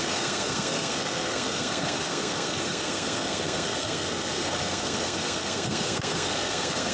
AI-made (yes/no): yes